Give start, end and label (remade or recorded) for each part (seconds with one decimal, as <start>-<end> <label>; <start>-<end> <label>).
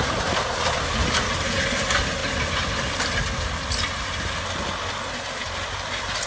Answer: 0.0-2.2 remade; 2.2-5.4 recorded; 5.4-6.3 remade